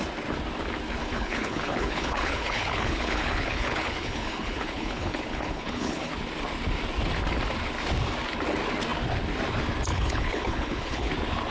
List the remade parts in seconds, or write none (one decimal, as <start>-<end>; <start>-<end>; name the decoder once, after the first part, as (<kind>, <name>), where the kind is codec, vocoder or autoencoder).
1.0-6.1 (codec, HILCodec); 9.9-11.1